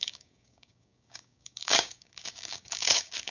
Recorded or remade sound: remade